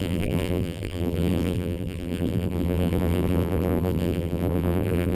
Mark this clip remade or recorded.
remade